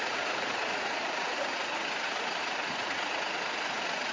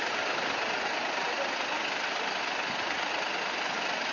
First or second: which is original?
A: second